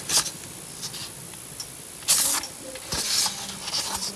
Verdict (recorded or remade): recorded